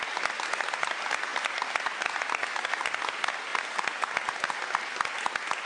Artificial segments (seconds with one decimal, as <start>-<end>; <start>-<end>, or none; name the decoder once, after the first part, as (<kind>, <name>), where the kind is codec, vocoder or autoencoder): none